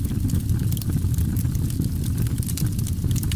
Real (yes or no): yes